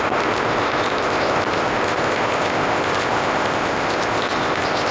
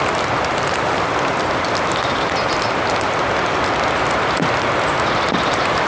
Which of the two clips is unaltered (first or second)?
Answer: second